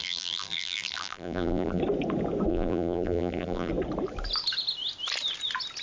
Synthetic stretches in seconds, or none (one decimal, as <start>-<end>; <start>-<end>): 0.0-1.8; 2.5-3.7